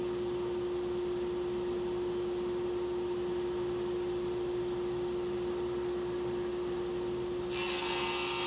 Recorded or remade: recorded